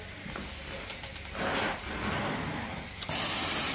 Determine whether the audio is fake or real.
real